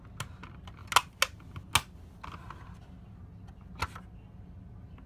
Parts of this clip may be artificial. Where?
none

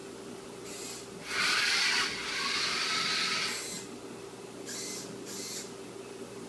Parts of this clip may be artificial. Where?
none

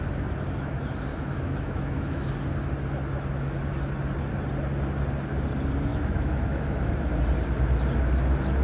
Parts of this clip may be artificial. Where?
1.1-2.3 (autoencoder, DAC-VAE); 5.9-6.9

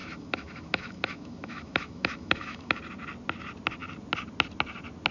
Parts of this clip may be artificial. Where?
0.0-2.8 (autoencoder, DAC-VAE)